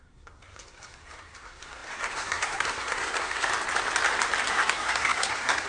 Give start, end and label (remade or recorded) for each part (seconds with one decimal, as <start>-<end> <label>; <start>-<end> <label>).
0.0-3.5 remade; 3.5-4.5 recorded; 4.5-5.7 remade